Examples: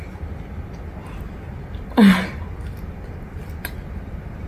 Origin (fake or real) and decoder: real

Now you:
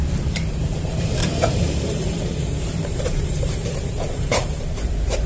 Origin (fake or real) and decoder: fake, vocoder, BigVGAN v2